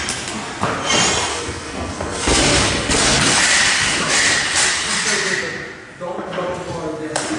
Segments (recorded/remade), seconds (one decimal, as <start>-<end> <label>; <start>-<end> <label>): 0.0-1.3 recorded; 1.3-2.4 remade; 2.4-7.4 recorded